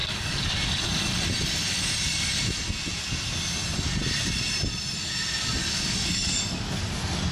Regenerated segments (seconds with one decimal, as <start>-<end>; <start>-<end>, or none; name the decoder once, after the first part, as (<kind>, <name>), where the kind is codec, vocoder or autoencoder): 0.0-0.9 (codec, DAC); 5.6-6.4